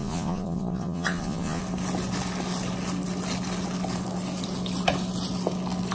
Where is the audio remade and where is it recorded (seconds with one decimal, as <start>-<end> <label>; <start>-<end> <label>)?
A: 0.0-1.6 remade; 1.6-5.9 recorded